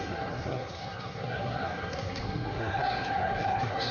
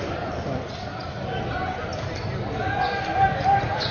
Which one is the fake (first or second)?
first